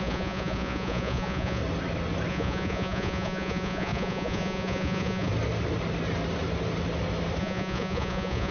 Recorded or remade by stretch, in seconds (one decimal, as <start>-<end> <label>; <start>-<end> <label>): 0.0-1.6 remade; 1.6-2.3 recorded; 2.3-5.3 remade; 5.3-7.4 recorded; 7.4-8.5 remade